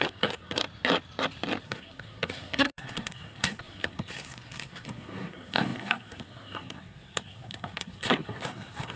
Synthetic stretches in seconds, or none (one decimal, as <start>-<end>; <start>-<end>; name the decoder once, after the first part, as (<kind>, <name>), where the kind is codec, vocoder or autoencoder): 0.0-0.6 (codec, SNAC); 1.6-9.0